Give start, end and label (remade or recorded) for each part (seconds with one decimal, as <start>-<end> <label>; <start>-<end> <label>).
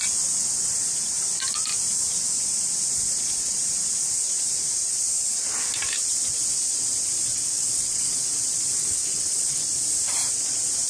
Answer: 0.0-7.3 recorded; 7.3-8.2 remade; 8.2-8.8 recorded; 8.8-9.6 remade; 9.6-10.9 recorded